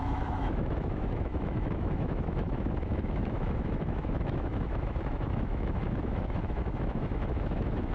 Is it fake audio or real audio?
fake